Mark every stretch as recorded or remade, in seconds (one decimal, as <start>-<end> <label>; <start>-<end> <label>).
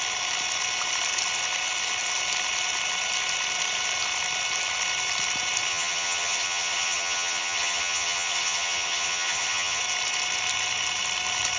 0.0-5.7 recorded; 5.7-9.8 remade; 9.8-11.6 recorded